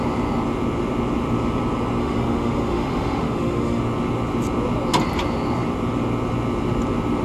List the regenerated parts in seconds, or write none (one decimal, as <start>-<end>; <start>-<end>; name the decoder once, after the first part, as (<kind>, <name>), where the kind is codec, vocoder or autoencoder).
2.0-3.8 (autoencoder, DAC-VAE)